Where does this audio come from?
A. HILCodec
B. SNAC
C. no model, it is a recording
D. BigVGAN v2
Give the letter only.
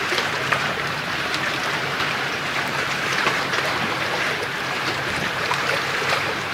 D